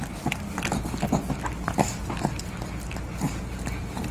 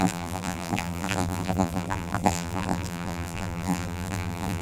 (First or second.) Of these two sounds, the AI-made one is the second